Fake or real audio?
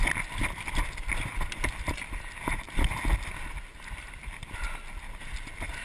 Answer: real